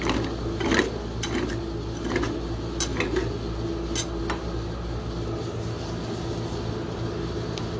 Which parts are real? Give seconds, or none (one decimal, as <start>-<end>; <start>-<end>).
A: 0.0-7.8